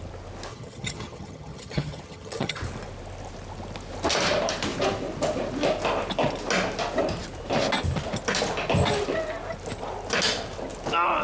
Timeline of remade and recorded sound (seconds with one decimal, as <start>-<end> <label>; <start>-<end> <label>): 0.0-0.5 recorded; 0.5-2.6 remade; 2.6-11.2 recorded